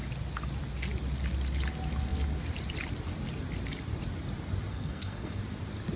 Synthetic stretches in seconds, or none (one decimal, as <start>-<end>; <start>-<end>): 4.7-5.4